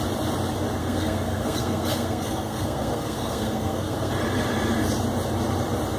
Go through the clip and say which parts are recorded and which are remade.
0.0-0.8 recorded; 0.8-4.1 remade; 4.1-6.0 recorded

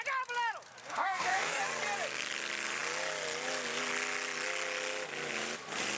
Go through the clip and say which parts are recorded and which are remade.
0.0-0.8 recorded; 0.8-1.6 remade; 1.6-6.0 recorded

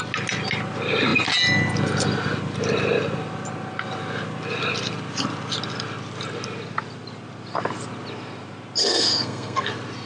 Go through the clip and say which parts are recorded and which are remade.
0.0-8.8 recorded; 8.8-9.7 remade; 9.7-10.1 recorded

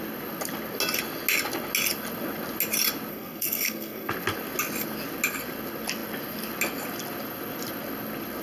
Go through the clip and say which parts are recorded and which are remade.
0.0-3.1 recorded; 3.1-4.1 remade; 4.1-8.4 recorded

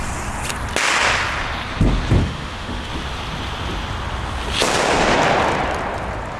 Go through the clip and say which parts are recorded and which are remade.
0.0-2.2 recorded; 2.2-2.9 remade; 2.9-6.4 recorded

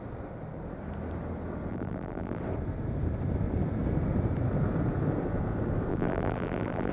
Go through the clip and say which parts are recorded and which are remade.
0.0-1.7 recorded; 1.7-2.4 remade; 2.4-5.9 recorded; 5.9-6.9 remade

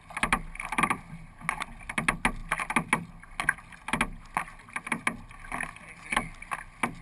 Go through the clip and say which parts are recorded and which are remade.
0.0-7.0 recorded

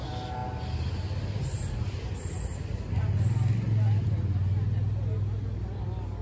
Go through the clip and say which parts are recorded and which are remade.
0.0-6.2 recorded